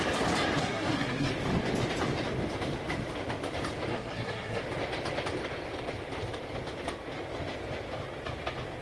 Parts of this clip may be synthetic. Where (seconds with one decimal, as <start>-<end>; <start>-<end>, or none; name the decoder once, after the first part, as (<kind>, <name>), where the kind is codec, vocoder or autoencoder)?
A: 0.6-1.3 (codec, SNAC); 3.9-4.6